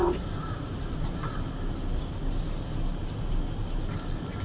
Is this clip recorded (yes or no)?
yes